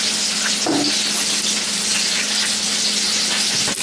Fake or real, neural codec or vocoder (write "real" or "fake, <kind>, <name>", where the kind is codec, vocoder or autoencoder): real